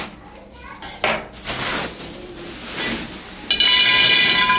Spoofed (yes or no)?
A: no